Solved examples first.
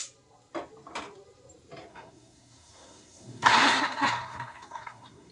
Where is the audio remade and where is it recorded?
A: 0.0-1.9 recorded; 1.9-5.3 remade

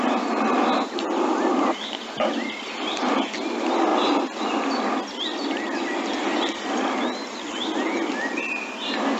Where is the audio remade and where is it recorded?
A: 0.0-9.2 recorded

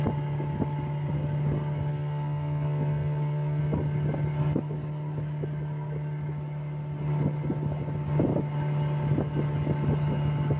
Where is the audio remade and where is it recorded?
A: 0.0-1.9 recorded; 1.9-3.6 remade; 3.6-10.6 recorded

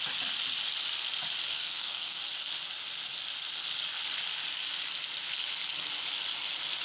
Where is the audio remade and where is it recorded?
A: 0.0-1.5 recorded; 1.5-2.2 remade; 2.2-6.8 recorded

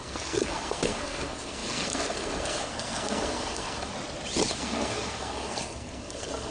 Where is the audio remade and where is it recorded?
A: 0.0-3.9 remade; 3.9-4.5 recorded; 4.5-6.5 remade

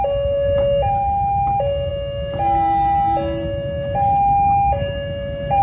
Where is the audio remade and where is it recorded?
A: 0.0-5.6 recorded

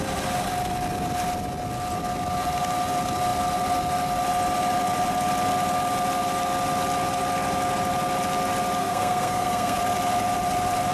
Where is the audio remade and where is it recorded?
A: 0.0-8.8 recorded; 8.8-9.8 remade; 9.8-10.9 recorded